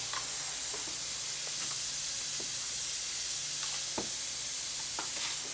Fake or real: real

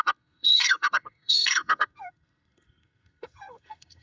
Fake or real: fake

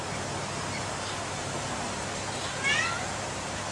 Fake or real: real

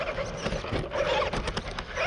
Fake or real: real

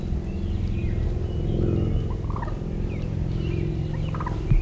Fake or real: real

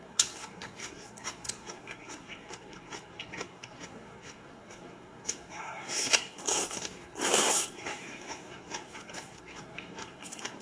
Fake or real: fake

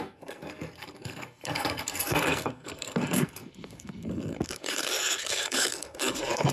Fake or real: fake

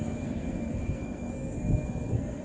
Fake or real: fake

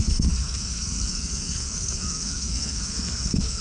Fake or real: fake